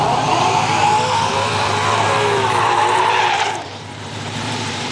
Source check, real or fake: fake